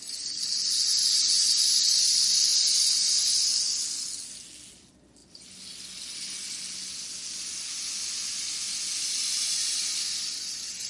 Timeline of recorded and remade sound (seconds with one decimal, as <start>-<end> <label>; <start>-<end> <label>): 0.0-10.9 recorded